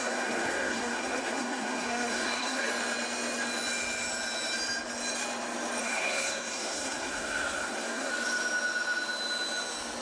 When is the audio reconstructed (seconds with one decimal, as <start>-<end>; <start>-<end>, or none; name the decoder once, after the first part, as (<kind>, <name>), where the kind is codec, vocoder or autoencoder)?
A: 0.0-2.7 (codec, SNAC); 5.8-8.1